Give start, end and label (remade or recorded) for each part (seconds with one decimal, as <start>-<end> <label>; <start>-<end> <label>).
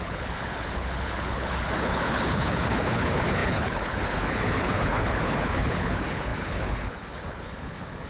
0.0-8.1 remade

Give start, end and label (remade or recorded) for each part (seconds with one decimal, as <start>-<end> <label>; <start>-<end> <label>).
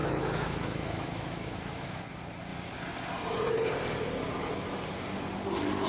0.0-2.0 remade; 2.0-5.9 recorded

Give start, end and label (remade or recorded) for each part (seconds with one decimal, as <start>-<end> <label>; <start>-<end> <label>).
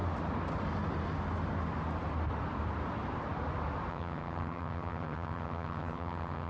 0.0-3.9 recorded; 3.9-6.5 remade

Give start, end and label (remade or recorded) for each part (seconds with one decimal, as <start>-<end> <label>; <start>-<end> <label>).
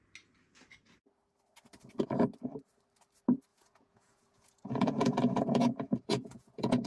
0.0-3.5 recorded; 3.5-6.9 remade